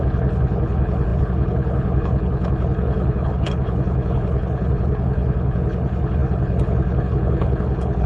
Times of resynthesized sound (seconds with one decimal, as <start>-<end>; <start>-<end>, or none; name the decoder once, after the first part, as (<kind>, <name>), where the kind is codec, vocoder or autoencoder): 0.0-8.1 (codec, HILCodec)

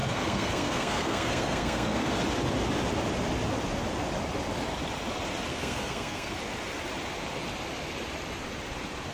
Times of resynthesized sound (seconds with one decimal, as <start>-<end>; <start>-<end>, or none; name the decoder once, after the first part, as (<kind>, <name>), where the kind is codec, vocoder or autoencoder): 0.0-2.2 (codec, SNAC); 5.5-6.3